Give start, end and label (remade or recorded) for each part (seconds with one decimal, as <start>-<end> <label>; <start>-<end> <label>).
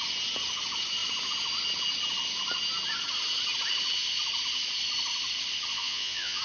0.0-5.7 recorded; 5.7-6.4 remade